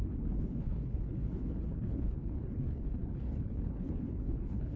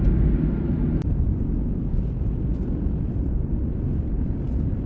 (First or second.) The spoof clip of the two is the first